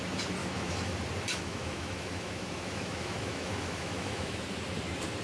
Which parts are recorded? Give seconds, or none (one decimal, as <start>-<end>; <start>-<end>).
0.0-0.4; 0.9-1.3; 4.4-5.2